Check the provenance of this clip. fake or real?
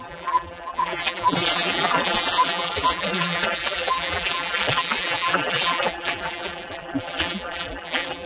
fake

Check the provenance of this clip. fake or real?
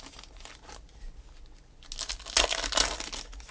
real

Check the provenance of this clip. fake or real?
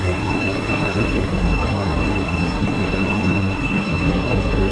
fake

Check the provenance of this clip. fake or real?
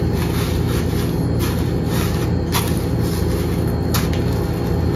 real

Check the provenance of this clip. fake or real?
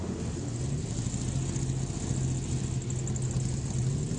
real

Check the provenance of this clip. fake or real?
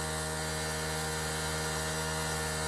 real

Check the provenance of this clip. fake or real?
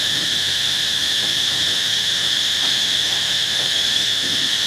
fake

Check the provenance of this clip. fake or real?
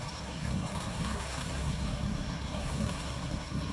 fake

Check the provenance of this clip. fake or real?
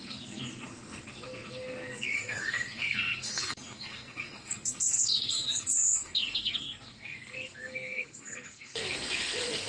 fake